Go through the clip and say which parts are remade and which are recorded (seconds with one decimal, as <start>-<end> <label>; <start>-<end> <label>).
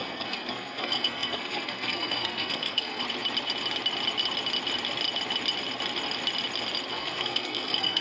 0.0-3.0 remade; 3.0-6.9 recorded; 6.9-8.0 remade